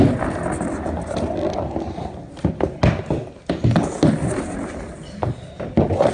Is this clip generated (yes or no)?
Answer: no